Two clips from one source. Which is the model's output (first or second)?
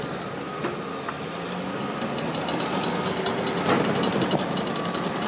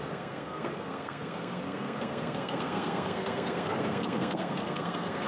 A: second